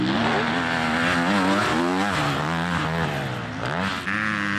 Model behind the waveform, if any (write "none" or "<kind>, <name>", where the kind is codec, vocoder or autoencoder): none